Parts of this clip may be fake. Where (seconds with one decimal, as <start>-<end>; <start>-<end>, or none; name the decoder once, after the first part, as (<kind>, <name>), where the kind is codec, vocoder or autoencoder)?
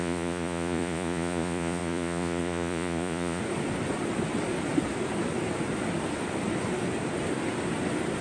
0.0-3.4 (vocoder, Vocos)